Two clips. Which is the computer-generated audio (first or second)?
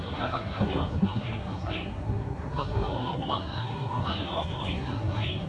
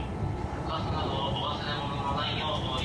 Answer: first